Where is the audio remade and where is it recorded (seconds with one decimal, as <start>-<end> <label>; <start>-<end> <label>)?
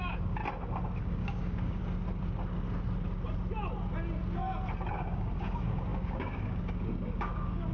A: 0.0-0.4 remade; 0.4-1.0 recorded; 1.0-1.8 remade; 1.8-4.9 recorded; 4.9-7.7 remade